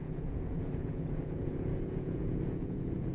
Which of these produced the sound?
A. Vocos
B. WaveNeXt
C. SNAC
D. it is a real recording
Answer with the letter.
A